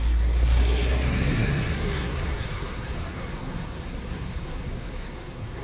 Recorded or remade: remade